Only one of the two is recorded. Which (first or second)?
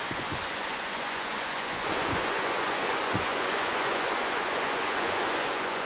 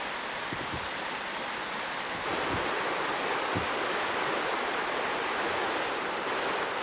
second